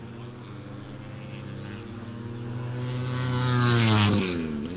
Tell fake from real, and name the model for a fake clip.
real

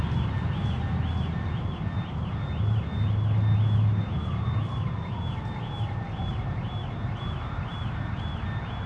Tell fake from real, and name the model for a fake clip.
real